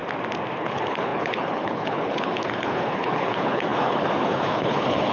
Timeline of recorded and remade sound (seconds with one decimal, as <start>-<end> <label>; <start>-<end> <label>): 0.0-0.6 recorded; 0.6-5.1 remade